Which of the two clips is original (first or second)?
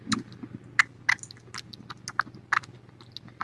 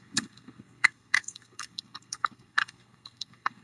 first